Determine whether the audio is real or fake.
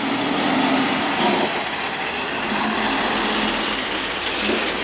real